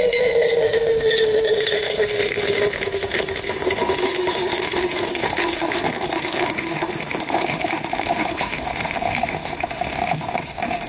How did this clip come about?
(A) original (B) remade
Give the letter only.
B